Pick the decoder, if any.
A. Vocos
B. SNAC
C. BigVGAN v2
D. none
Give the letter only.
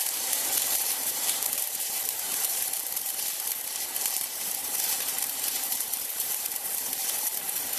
C